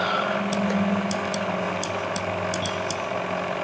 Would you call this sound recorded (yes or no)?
yes